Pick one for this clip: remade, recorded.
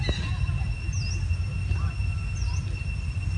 recorded